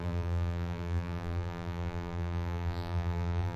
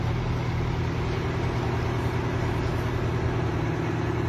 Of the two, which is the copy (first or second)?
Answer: first